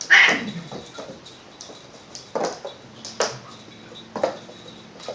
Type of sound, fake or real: real